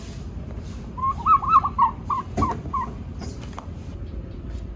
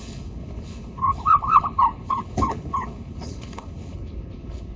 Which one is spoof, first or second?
second